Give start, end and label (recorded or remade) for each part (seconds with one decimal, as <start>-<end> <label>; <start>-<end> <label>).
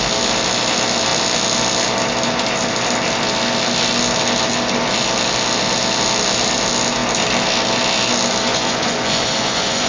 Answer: 0.0-8.5 recorded; 8.5-9.9 remade